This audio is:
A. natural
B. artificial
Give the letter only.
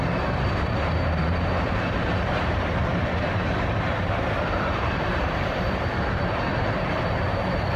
B